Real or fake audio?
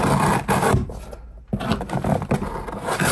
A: real